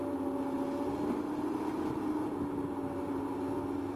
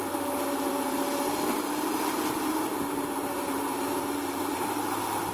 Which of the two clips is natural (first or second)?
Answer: first